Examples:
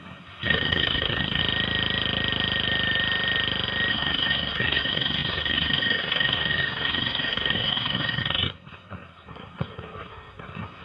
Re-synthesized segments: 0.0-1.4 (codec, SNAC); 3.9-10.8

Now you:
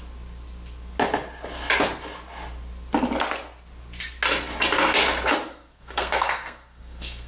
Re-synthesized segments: 5.5-7.3 (codec, SNAC)